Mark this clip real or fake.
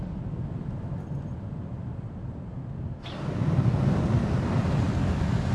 real